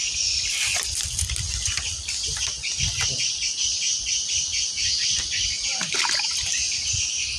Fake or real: real